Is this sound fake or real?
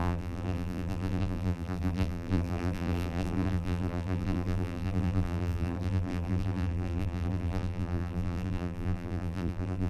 fake